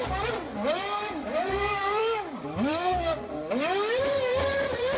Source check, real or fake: fake